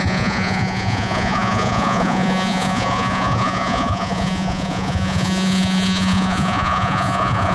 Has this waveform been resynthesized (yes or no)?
yes